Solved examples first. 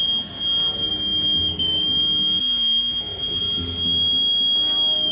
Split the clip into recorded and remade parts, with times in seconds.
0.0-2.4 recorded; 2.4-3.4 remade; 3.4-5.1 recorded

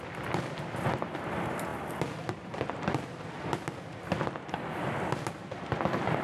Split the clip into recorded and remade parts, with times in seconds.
0.0-6.2 recorded

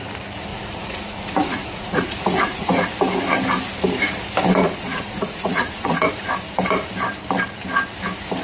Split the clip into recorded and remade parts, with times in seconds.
0.0-0.5 recorded; 0.5-2.9 remade; 2.9-4.6 recorded; 4.6-6.1 remade; 6.1-8.4 recorded

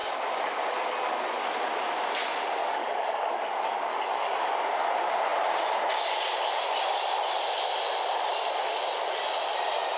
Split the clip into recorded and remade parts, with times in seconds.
0.0-2.6 recorded; 2.6-3.3 remade; 3.3-3.9 recorded; 3.9-4.5 remade; 4.5-10.0 recorded

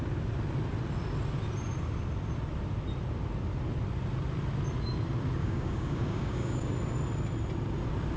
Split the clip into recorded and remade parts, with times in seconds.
0.0-5.4 recorded; 5.4-6.7 remade; 6.7-8.2 recorded